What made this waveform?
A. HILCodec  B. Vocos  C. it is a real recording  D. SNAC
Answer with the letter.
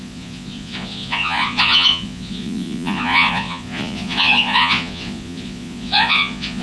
B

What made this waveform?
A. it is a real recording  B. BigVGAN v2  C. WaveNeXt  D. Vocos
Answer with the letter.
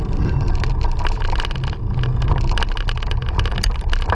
A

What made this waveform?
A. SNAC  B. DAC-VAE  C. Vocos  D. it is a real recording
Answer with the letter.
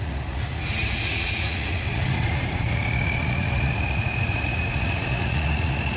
C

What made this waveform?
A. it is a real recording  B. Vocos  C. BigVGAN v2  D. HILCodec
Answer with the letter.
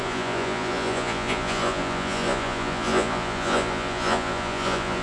B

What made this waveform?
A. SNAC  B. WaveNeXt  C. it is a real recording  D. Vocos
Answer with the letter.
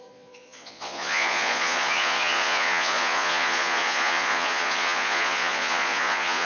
D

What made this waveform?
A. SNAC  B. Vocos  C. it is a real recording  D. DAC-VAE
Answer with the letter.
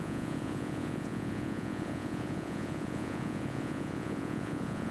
B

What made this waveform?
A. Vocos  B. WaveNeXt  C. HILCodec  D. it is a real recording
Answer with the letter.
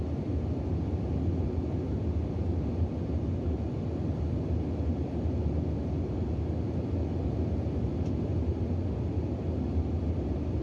D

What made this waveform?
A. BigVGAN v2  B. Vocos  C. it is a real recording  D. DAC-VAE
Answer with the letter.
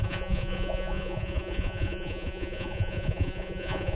B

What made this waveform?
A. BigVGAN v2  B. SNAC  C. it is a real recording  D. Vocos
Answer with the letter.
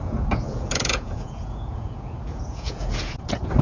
D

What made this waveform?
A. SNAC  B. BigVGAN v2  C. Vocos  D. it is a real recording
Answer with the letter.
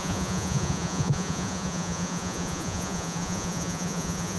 C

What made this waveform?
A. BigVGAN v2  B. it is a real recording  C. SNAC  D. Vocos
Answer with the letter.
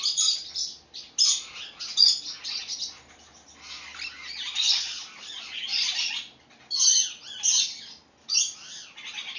B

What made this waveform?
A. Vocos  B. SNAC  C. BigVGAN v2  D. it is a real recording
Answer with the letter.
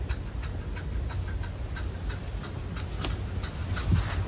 D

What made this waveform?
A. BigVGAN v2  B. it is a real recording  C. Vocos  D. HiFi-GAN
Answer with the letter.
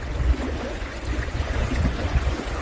C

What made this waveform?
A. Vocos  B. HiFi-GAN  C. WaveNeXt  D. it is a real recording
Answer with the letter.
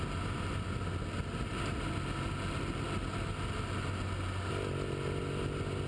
D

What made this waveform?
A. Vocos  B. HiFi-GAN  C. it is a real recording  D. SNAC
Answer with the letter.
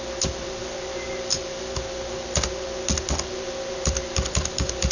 C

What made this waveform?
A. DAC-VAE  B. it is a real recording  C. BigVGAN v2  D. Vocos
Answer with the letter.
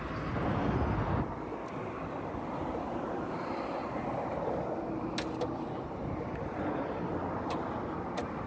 B